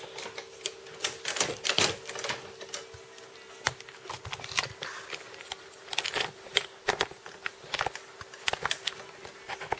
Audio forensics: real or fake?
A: real